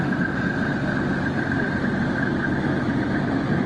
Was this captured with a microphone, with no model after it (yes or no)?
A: yes